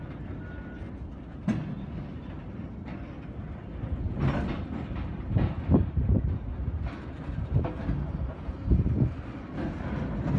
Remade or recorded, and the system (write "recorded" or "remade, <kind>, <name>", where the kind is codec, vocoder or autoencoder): recorded